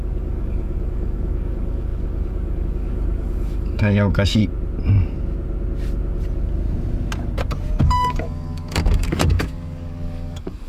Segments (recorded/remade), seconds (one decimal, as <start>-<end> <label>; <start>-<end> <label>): 0.0-4.4 remade; 4.4-7.8 recorded; 7.8-10.7 remade